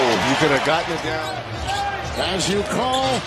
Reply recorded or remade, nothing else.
recorded